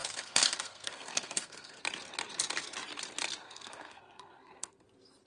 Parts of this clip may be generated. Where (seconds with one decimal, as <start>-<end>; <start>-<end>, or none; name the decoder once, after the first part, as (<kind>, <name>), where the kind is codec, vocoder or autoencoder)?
0.0-1.8 (codec, SNAC); 3.4-4.8